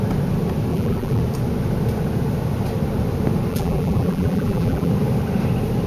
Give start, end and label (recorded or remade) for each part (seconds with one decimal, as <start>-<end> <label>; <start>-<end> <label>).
0.0-0.7 recorded; 0.7-1.2 remade; 1.2-3.5 recorded; 3.5-4.9 remade; 4.9-5.9 recorded